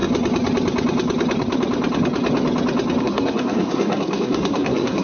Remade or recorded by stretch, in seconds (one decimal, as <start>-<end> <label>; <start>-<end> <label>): 0.0-3.0 recorded; 3.0-5.0 remade

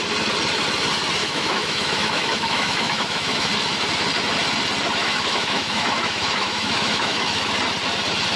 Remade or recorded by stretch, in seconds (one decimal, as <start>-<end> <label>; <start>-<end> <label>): 0.0-1.2 recorded; 1.2-3.5 remade; 3.5-5.0 recorded; 5.0-7.5 remade; 7.5-8.4 recorded

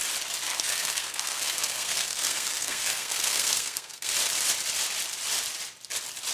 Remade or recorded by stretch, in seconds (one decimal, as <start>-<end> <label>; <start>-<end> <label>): 0.0-0.5 recorded; 0.5-4.1 remade; 4.1-6.3 recorded

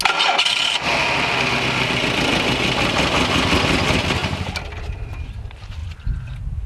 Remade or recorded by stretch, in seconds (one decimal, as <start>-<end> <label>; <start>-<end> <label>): 0.0-6.7 recorded

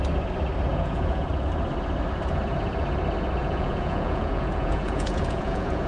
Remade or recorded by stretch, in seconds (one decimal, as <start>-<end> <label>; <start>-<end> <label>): 0.0-0.7 recorded; 0.7-1.3 remade; 1.3-3.4 recorded; 3.4-5.9 remade